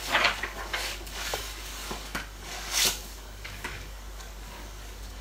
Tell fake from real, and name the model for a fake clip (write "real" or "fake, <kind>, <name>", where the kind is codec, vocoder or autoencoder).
fake, codec, DAC